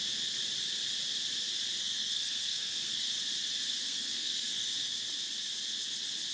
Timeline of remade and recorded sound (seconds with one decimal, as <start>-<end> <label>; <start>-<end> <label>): 0.0-1.8 recorded; 1.8-3.1 remade; 3.1-3.8 recorded; 3.8-4.7 remade; 4.7-6.3 recorded